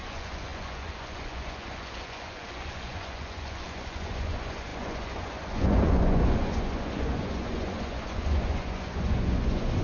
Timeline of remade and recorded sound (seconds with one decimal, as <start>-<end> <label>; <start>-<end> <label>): 0.0-9.8 remade